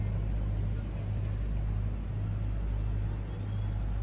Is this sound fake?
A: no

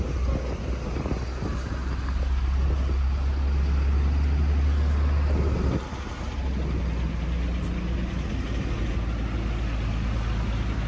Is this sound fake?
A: no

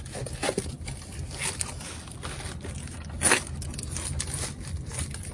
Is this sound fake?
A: no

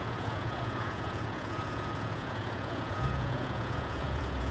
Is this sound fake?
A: yes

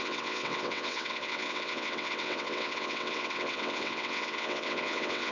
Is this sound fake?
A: yes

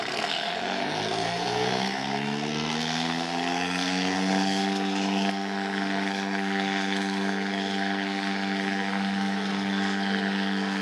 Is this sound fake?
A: yes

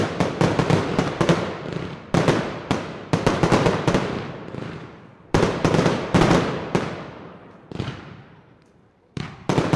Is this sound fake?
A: yes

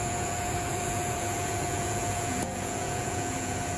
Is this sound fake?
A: yes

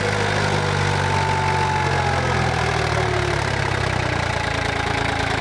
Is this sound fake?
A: no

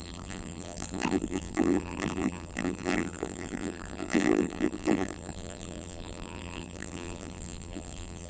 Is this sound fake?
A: yes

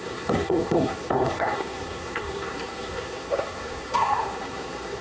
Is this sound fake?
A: yes